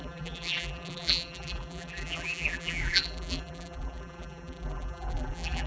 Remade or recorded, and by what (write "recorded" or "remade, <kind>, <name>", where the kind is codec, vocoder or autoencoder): remade, vocoder, BigVGAN v2